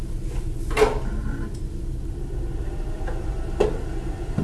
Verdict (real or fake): real